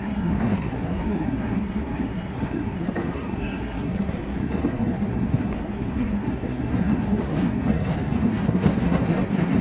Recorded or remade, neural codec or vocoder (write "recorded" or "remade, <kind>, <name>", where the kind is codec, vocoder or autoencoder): remade, codec, SNAC